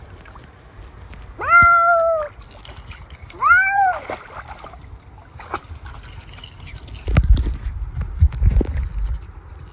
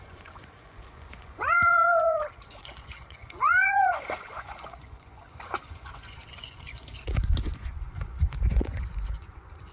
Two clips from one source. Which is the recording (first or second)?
first